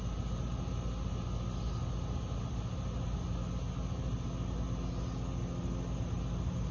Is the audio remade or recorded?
recorded